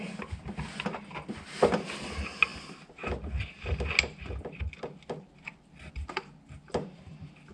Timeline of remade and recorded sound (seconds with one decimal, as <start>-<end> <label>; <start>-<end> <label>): 0.0-7.5 recorded